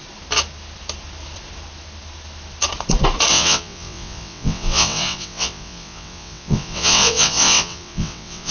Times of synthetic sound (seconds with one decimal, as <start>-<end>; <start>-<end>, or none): 3.3-8.5